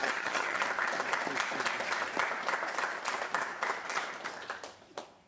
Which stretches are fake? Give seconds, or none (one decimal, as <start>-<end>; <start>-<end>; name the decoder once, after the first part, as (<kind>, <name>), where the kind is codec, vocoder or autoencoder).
0.0-0.6 (vocoder, HiFi-GAN)

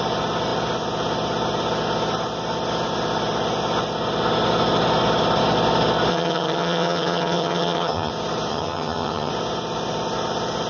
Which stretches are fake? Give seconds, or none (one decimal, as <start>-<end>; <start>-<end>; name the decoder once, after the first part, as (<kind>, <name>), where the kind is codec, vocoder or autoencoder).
6.1-8.1 (vocoder, HiFi-GAN); 8.5-9.3

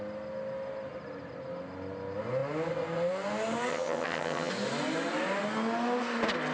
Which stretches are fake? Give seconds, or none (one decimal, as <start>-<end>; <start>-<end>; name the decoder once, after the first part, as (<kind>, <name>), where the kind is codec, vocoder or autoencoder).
3.7-4.5 (vocoder, HiFi-GAN)